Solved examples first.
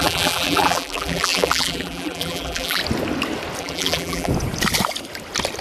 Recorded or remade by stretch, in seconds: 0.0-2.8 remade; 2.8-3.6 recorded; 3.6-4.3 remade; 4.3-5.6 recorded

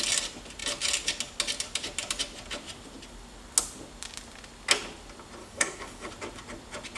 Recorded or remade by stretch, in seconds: 0.0-5.4 recorded; 5.4-6.1 remade; 6.1-7.0 recorded

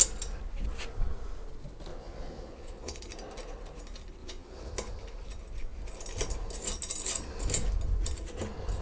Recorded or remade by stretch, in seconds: 0.0-1.9 recorded; 1.9-3.0 remade; 3.0-4.2 recorded; 4.2-4.7 remade; 4.7-8.8 recorded

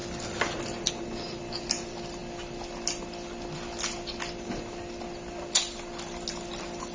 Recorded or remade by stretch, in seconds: 0.0-6.9 recorded

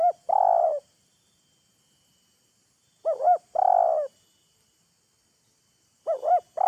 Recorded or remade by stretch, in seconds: 0.0-6.7 recorded

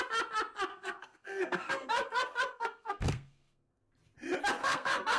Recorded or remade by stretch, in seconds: 0.0-0.7 recorded; 0.7-3.8 remade; 3.8-4.6 recorded; 4.6-5.2 remade

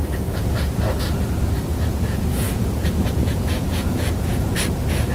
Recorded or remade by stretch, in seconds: 0.0-1.7 recorded; 1.7-4.5 remade; 4.5-5.1 recorded

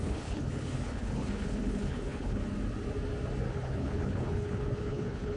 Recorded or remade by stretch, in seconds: 0.0-2.4 remade; 2.4-3.5 recorded; 3.5-5.4 remade